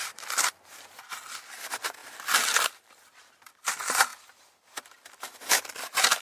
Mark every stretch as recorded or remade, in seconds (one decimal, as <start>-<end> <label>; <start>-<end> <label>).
0.0-1.4 remade; 1.4-2.0 recorded; 2.0-3.2 remade; 3.2-4.1 recorded; 4.1-5.4 remade; 5.4-6.2 recorded